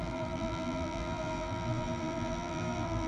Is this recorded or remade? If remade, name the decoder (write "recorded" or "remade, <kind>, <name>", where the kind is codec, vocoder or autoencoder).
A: remade, vocoder, BigVGAN v2